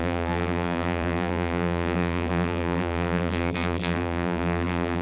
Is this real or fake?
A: fake